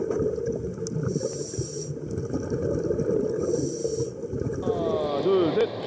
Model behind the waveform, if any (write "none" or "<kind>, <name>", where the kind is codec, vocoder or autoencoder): none